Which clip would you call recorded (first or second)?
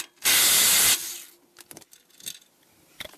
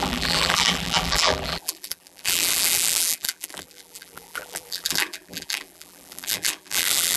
first